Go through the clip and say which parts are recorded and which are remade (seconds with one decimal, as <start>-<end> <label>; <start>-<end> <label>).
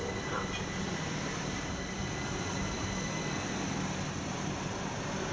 0.0-3.2 remade; 3.2-5.3 recorded